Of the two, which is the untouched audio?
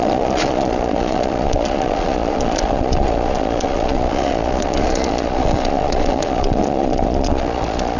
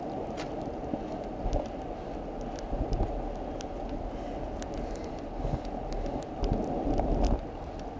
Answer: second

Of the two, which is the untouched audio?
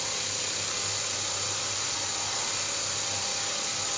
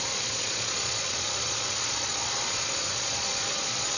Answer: first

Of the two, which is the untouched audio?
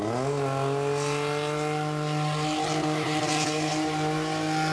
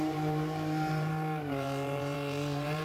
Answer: first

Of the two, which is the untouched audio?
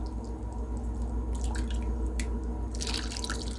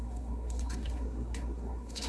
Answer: first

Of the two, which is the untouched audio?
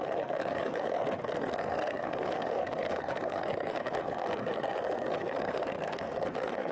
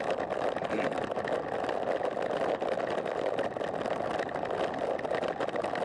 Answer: second